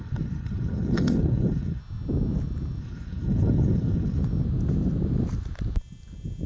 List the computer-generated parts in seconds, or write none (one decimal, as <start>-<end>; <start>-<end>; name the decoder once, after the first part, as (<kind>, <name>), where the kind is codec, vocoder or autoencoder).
0.0-1.8 (codec, HILCodec); 2.8-4.2